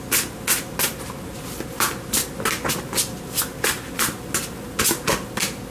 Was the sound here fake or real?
real